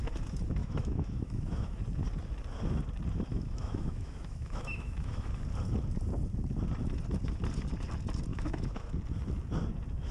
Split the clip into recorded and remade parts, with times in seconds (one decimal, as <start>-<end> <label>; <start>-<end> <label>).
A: 0.0-0.6 recorded; 0.6-1.8 remade; 1.8-3.3 recorded; 3.3-5.4 remade; 5.4-8.3 recorded; 8.3-8.9 remade; 8.9-10.1 recorded